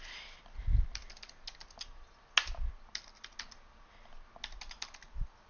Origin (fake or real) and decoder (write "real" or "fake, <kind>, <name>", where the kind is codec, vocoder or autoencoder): real